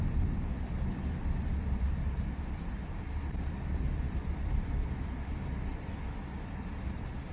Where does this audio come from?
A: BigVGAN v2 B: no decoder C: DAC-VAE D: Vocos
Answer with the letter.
B